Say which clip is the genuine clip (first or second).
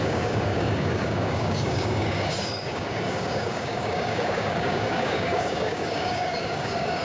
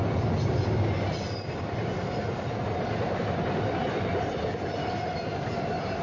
second